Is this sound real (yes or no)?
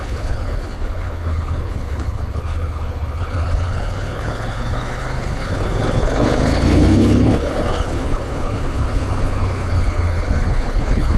no